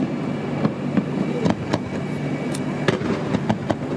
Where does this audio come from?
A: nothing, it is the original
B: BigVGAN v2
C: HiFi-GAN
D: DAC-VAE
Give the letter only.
A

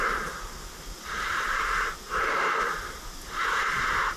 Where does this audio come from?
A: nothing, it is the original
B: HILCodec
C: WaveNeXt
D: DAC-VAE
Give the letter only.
A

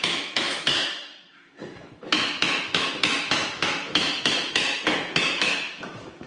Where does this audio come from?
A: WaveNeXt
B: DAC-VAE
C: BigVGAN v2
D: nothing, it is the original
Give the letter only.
B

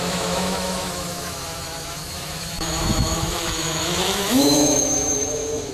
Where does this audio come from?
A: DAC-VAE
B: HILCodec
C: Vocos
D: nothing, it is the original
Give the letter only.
A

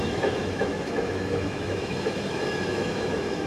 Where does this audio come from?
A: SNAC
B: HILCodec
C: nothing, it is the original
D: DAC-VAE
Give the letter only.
D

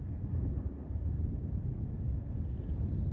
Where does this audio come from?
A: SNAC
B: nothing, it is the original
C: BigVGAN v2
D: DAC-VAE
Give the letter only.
B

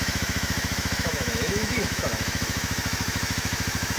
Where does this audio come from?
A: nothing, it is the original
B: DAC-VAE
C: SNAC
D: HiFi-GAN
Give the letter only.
B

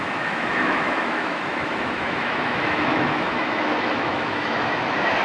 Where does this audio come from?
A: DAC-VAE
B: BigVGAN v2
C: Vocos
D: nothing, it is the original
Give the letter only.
A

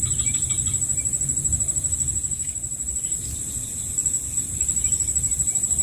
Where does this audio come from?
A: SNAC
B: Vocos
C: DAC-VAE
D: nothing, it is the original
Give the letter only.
D